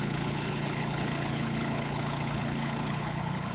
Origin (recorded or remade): remade